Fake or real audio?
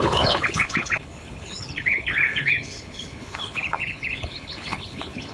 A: fake